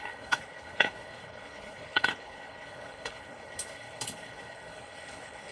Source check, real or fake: fake